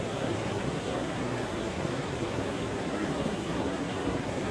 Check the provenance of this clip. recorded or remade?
remade